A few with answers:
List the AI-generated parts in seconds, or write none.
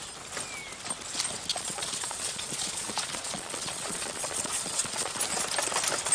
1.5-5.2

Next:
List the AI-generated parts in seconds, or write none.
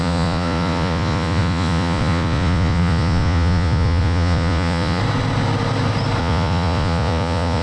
0.0-5.0; 6.2-7.6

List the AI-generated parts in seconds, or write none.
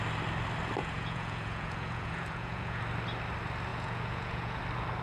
0.8-2.8; 3.7-4.6